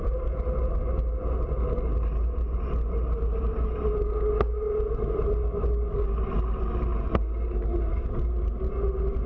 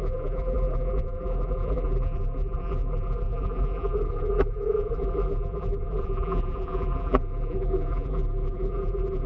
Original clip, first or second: first